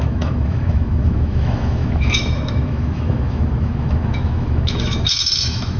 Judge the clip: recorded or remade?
remade